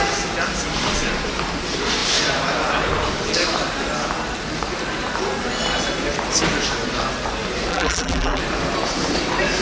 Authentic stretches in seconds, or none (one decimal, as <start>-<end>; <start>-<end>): 0.0-7.7; 8.4-9.6